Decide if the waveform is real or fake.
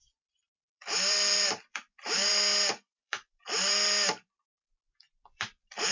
fake